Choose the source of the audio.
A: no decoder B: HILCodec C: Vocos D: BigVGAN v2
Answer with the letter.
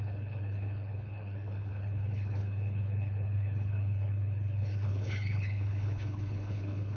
B